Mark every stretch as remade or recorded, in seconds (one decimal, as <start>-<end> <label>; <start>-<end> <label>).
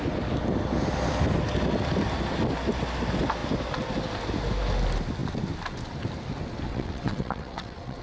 0.0-6.7 recorded; 6.7-8.0 remade